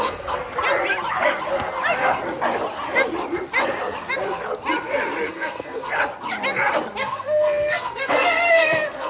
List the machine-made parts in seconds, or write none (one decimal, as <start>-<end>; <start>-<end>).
0.0-0.4; 5.3-6.0; 7.0-9.1